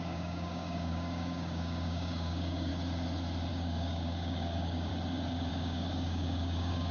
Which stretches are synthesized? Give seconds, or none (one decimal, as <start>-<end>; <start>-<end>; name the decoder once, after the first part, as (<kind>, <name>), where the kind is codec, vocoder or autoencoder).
0.0-2.7 (codec, DAC); 3.5-4.9; 5.5-6.9